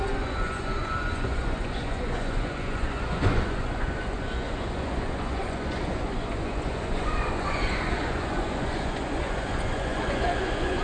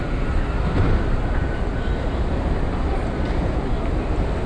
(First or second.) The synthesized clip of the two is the first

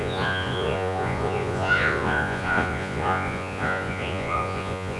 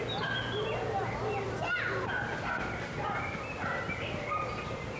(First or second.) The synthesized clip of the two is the first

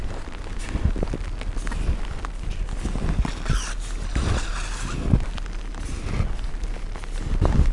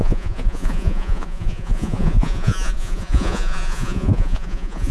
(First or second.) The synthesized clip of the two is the second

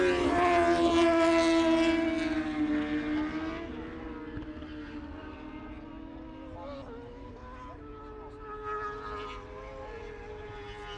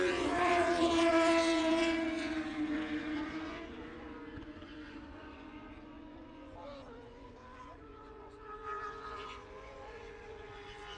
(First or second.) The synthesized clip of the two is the second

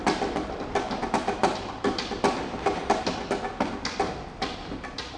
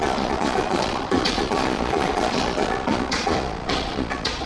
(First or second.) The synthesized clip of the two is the second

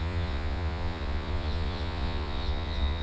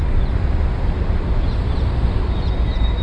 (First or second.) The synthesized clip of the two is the first